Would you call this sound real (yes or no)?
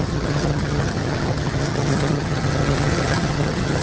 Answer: no